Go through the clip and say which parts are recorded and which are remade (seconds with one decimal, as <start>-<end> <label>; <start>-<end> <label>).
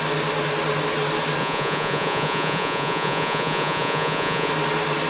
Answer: 0.0-1.4 recorded; 1.4-4.5 remade; 4.5-5.1 recorded